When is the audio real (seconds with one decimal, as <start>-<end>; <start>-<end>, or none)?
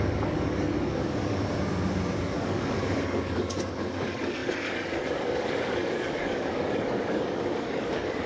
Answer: 1.4-2.2